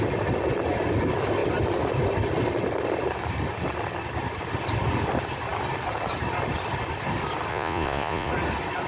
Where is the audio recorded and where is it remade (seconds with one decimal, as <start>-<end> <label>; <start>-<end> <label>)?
0.0-7.5 recorded; 7.5-8.3 remade; 8.3-8.9 recorded